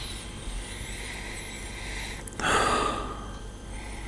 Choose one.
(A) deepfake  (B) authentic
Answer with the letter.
B